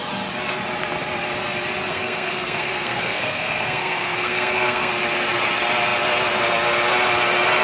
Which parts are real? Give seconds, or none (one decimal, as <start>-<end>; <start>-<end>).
0.0-1.9; 4.9-7.6